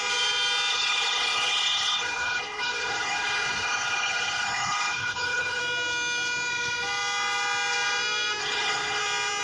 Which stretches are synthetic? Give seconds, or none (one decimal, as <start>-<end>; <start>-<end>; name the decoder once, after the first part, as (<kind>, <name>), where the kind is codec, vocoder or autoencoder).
0.7-5.6 (codec, HILCodec); 8.4-9.0